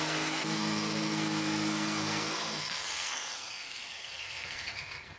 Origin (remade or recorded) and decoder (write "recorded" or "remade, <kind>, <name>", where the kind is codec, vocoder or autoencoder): remade, codec, SNAC